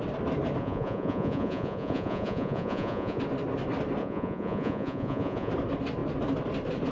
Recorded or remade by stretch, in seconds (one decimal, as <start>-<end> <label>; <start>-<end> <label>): 0.0-0.6 recorded; 0.6-3.2 remade; 3.2-4.0 recorded; 4.0-5.5 remade; 5.5-6.9 recorded